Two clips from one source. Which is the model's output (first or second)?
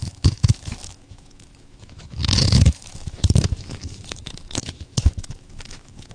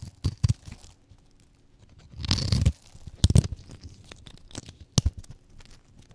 first